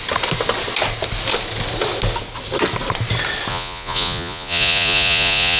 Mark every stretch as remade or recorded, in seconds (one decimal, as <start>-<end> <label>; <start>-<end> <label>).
0.0-3.5 recorded; 3.5-5.6 remade

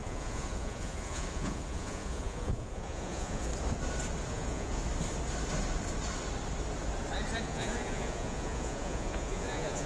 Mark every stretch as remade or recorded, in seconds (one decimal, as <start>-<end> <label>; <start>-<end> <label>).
0.0-3.5 remade; 3.5-4.3 recorded; 4.3-4.8 remade; 4.8-7.4 recorded; 7.4-9.9 remade

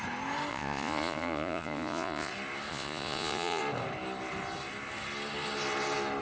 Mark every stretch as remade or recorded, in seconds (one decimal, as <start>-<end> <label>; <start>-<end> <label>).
0.0-0.5 recorded; 0.5-2.3 remade; 2.3-2.7 recorded; 2.7-3.6 remade; 3.6-6.2 recorded

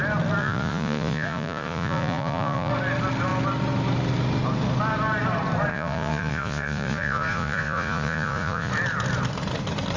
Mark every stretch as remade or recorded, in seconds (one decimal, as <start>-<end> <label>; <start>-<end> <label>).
0.0-0.4 recorded; 0.4-2.7 remade; 2.7-5.7 recorded; 5.7-8.7 remade; 8.7-10.0 recorded

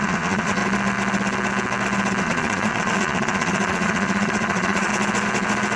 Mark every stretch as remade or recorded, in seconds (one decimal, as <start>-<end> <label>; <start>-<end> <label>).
0.0-0.6 remade; 0.6-2.2 recorded; 2.2-4.9 remade; 4.9-5.8 recorded

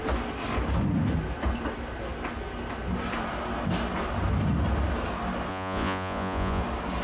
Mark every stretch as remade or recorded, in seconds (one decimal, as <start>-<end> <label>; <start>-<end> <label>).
0.0-5.5 recorded; 5.5-6.6 remade; 6.6-7.0 recorded

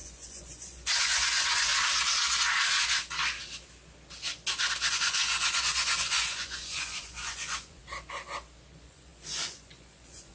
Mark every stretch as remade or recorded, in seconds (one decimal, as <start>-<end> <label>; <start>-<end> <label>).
0.0-1.7 remade; 1.7-4.9 recorded; 4.9-7.8 remade; 7.8-8.7 recorded; 8.7-10.3 remade